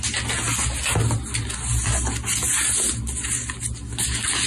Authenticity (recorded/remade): recorded